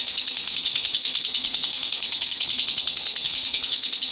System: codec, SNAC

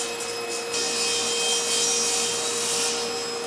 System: none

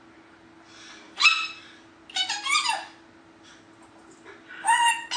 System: none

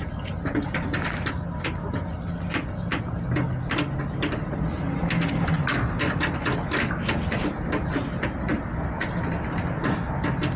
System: none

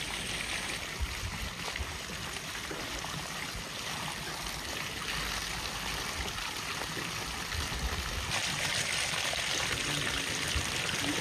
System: none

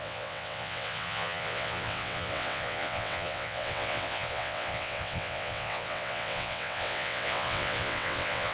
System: vocoder, WaveNeXt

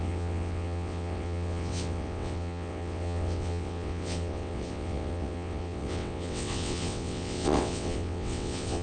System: vocoder, WaveNeXt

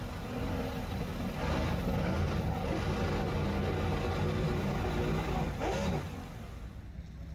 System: none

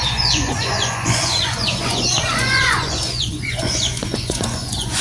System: vocoder, Vocos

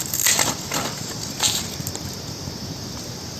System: none